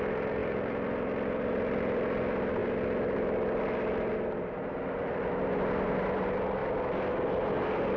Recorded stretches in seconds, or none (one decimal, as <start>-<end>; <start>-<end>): 0.0-0.4; 1.8-6.6; 7.1-8.0